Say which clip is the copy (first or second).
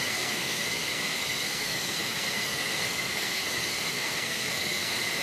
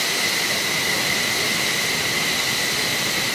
first